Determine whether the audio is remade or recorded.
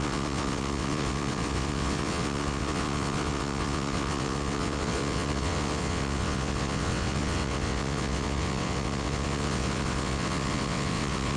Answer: remade